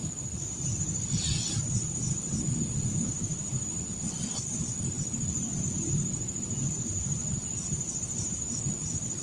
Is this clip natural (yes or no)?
yes